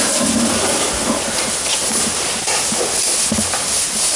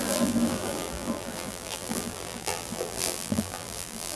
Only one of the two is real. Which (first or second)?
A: first